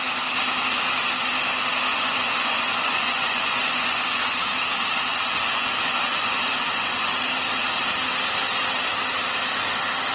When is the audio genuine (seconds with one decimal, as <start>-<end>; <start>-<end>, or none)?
0.0-1.9; 4.4-5.1; 7.1-10.1